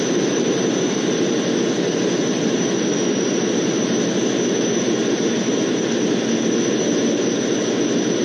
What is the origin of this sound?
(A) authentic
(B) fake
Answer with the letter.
A